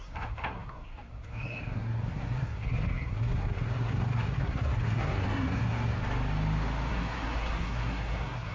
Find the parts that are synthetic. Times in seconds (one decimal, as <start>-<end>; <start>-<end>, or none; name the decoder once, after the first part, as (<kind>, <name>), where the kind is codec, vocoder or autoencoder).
0.0-6.0 (codec, SNAC); 6.9-8.5